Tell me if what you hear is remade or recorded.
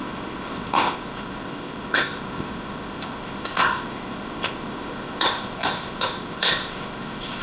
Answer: remade